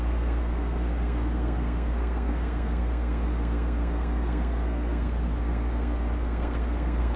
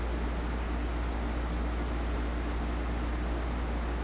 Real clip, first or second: second